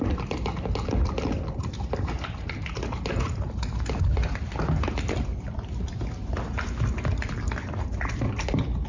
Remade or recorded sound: recorded